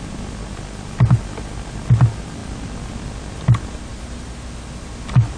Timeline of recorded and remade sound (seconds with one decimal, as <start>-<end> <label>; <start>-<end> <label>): 0.0-5.4 recorded